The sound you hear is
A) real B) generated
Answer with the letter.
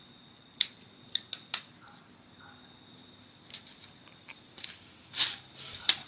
A